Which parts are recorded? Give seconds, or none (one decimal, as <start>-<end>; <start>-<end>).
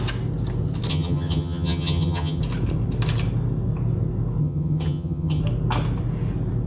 0.0-0.9; 2.4-4.4; 5.4-6.7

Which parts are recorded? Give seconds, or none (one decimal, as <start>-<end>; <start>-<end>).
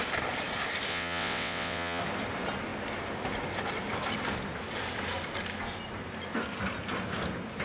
0.0-0.9; 2.0-7.6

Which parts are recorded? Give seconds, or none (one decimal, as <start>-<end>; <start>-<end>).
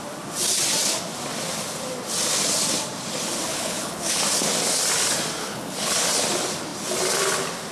0.0-3.5; 4.2-5.4; 5.9-7.7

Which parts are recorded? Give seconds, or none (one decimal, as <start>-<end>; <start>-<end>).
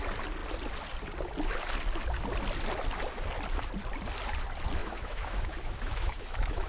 0.0-4.8